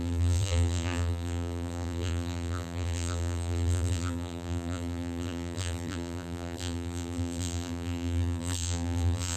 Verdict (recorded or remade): remade